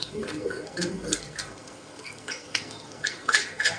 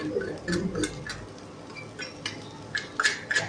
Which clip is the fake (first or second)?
first